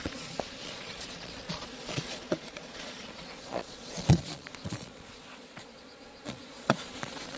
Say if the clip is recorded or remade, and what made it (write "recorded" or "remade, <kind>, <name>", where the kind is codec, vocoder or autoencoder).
remade, vocoder, Vocos